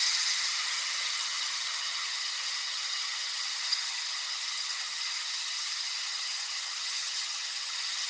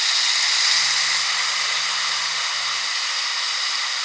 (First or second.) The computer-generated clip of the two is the first